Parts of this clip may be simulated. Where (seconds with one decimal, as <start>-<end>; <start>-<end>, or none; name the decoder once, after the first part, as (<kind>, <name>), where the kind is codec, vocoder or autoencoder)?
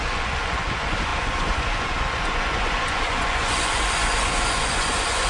0.0-5.3 (vocoder, Vocos)